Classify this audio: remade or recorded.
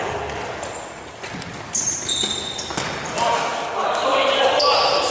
recorded